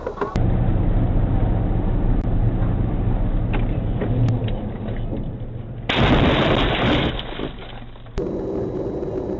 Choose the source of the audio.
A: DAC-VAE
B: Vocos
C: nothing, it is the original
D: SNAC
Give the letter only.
C